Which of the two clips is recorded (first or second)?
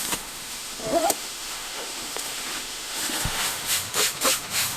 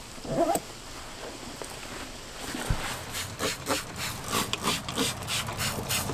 second